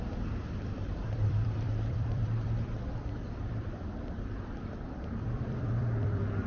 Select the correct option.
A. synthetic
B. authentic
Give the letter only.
A